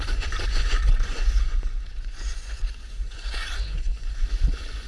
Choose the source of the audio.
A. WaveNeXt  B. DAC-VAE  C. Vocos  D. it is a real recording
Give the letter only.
C